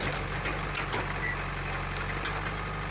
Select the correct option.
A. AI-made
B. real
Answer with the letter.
B